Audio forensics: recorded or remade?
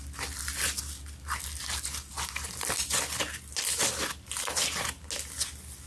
recorded